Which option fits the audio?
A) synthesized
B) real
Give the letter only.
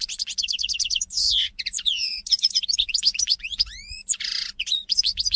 A